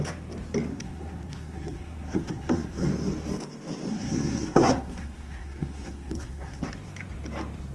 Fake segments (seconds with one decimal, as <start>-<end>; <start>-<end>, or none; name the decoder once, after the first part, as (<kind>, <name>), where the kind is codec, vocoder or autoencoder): 0.7-2.9 (codec, SNAC); 3.9-6.6